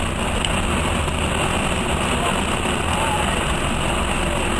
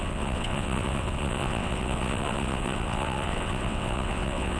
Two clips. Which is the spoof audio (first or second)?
second